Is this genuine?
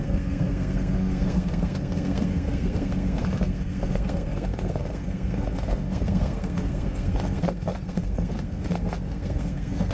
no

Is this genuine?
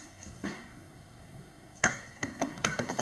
no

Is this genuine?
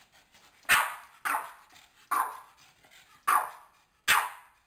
yes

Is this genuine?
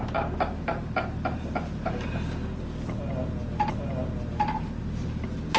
yes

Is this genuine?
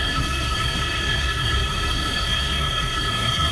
no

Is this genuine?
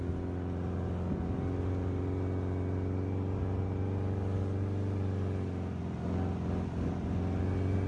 yes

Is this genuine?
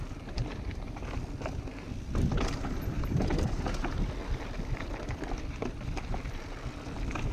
yes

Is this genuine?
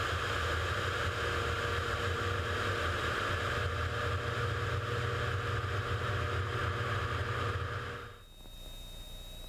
yes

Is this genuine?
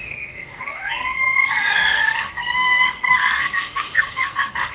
no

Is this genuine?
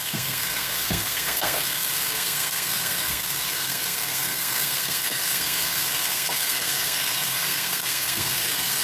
no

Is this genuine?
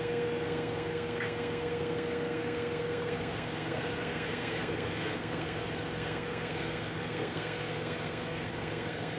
no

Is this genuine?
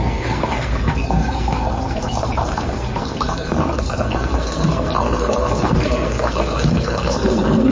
no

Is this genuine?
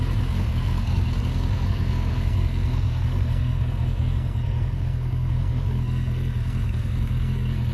no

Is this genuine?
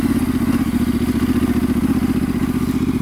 yes